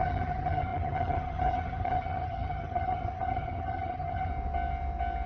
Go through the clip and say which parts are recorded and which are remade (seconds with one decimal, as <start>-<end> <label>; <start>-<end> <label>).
0.0-4.3 remade; 4.3-5.3 recorded